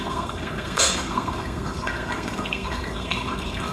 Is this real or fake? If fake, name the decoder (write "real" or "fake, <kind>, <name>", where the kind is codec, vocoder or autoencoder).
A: fake, codec, SNAC